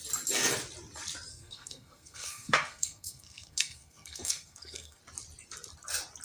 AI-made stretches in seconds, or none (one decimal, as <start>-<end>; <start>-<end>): 1.3-5.0